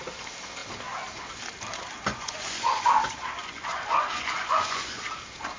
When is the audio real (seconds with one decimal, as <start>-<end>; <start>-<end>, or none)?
0.0-2.1; 2.9-3.4; 5.0-5.6